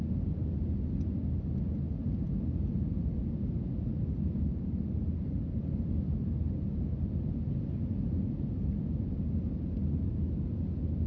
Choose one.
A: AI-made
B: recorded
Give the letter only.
B